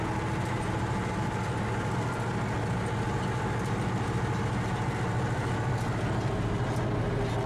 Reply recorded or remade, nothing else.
recorded